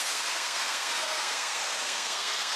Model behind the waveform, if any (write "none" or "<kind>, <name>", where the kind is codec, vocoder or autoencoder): codec, SNAC